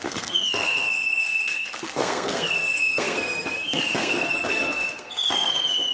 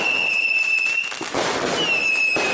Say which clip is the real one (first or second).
second